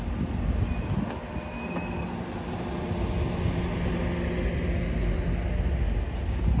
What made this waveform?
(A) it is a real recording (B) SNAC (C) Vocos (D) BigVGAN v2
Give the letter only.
A